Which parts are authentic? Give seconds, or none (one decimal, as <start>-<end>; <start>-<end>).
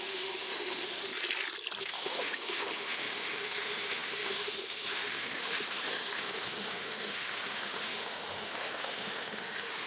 1.1-1.8